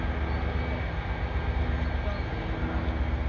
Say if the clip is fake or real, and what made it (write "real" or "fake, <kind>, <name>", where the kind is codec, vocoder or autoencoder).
real